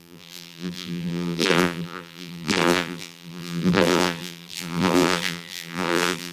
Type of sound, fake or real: fake